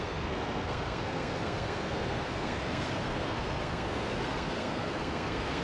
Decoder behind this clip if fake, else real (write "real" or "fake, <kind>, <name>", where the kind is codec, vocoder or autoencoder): fake, codec, SNAC